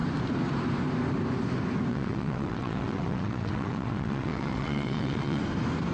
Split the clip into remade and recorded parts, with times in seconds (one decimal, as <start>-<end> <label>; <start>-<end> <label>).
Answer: 0.0-1.9 recorded; 1.9-5.4 remade; 5.4-5.9 recorded

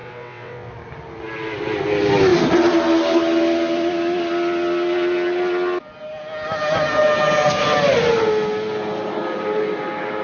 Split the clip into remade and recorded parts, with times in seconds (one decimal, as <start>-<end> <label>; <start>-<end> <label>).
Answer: 0.0-0.7 remade; 0.7-10.2 recorded

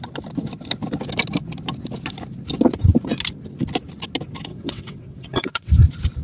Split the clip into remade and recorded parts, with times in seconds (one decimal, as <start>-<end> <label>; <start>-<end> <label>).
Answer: 0.0-4.5 recorded; 4.5-5.7 remade; 5.7-6.2 recorded

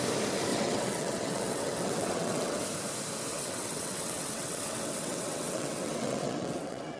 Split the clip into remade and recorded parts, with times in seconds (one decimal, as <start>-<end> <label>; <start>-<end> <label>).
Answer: 0.0-0.5 recorded; 0.5-2.6 remade; 2.6-3.3 recorded; 3.3-7.0 remade